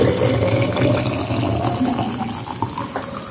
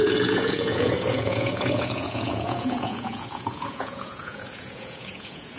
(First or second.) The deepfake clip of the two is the second